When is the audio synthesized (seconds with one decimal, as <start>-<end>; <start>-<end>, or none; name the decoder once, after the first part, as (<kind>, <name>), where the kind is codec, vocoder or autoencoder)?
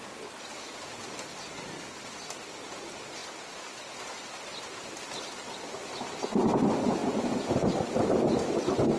none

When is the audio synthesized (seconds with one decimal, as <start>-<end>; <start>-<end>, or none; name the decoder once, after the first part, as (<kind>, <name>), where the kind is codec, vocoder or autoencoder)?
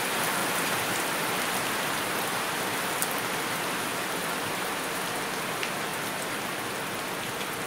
0.4-2.6 (vocoder, BigVGAN v2); 3.9-4.8; 5.9-6.4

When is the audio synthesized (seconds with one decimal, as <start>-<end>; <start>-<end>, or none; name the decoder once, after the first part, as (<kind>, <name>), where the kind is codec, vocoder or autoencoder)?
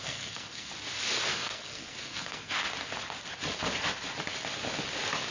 0.0-0.7 (codec, SNAC); 1.3-2.6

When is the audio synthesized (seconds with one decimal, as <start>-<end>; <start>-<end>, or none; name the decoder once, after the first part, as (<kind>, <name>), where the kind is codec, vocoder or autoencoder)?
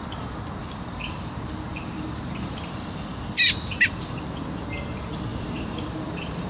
0.6-1.2 (vocoder, BigVGAN v2); 1.7-2.6; 5.3-6.5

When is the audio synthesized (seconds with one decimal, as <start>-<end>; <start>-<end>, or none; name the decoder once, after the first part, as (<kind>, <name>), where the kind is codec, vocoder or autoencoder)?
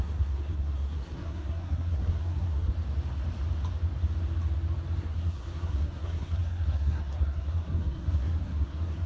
0.0-2.7 (codec, SNAC); 5.0-9.1